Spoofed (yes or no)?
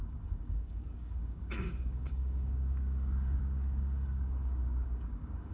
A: yes